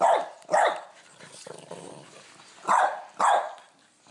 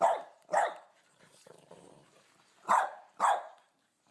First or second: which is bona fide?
first